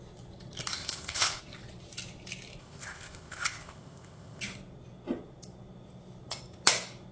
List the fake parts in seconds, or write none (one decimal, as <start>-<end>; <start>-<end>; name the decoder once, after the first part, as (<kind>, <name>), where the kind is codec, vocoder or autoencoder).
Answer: 0.7-1.4 (codec, ZipCodec); 2.6-4.4